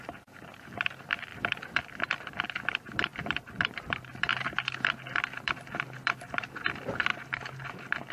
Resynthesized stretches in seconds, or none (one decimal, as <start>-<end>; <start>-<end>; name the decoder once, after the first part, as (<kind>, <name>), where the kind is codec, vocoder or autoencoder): 0.0-7.1 (vocoder, BigVGAN v2)